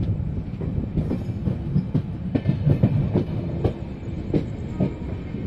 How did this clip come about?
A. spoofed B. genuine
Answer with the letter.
B